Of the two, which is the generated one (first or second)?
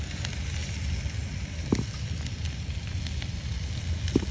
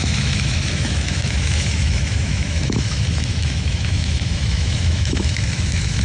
second